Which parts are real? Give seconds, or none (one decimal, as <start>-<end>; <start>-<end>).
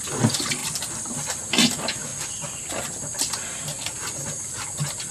0.0-5.1